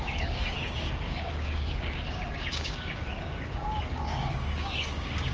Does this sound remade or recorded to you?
remade